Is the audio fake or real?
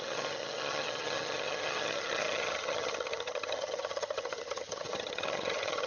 fake